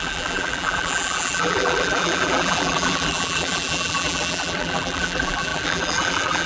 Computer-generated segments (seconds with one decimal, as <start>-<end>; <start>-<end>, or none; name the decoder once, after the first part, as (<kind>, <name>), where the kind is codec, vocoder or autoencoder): 0.0-6.5 (vocoder, BigVGAN v2)